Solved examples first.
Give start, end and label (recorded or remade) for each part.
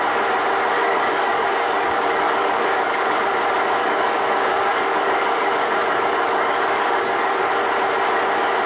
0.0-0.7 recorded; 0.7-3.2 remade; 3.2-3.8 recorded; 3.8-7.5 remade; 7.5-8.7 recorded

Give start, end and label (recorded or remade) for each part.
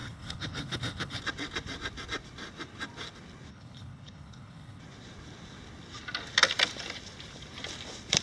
0.0-1.2 remade; 1.2-3.5 recorded; 3.5-4.8 remade; 4.8-8.2 recorded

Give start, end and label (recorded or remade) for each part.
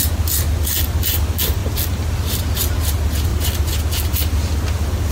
0.0-5.1 recorded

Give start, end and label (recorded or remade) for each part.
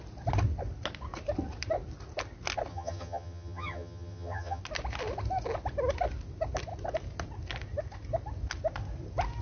0.0-2.7 recorded; 2.7-4.6 remade; 4.6-9.4 recorded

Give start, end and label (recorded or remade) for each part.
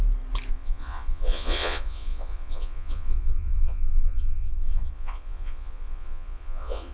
0.0-0.5 recorded; 0.5-6.9 remade